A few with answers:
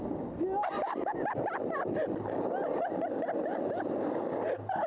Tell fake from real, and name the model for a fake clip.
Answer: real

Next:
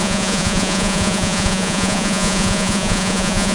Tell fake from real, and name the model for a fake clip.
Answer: fake, vocoder, Vocos